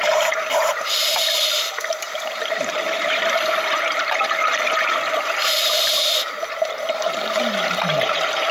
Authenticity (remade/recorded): remade